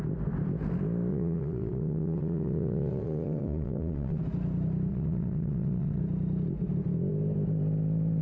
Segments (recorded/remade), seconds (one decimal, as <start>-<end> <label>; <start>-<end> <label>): 0.0-1.1 recorded; 1.1-4.2 remade; 4.2-4.9 recorded; 4.9-6.0 remade; 6.0-8.2 recorded